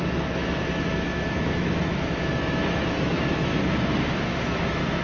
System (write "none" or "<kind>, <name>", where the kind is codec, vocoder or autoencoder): autoencoder, DAC-VAE